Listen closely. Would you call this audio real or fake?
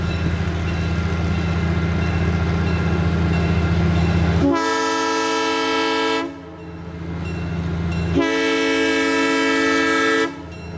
real